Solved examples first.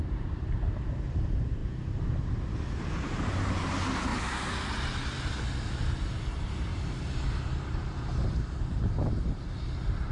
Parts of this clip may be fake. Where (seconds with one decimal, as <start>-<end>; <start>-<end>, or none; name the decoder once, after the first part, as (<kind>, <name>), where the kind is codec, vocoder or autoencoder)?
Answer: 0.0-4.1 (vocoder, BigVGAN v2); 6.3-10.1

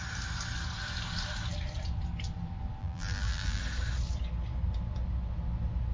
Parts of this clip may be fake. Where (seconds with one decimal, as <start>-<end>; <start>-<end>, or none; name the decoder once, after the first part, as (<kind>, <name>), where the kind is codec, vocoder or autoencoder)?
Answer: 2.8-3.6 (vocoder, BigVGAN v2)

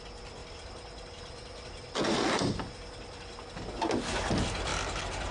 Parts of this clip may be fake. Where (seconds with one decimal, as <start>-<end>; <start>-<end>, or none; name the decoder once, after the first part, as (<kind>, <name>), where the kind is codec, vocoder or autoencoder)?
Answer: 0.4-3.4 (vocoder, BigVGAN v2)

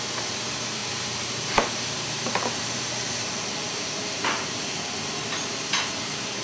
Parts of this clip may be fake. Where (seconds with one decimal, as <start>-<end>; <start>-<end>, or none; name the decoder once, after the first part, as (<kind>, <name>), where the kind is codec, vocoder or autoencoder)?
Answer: 0.8-4.6 (vocoder, BigVGAN v2)

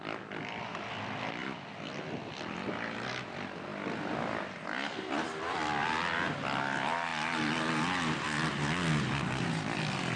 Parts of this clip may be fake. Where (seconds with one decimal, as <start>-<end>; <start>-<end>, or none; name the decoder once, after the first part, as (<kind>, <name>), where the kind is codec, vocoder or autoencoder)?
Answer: none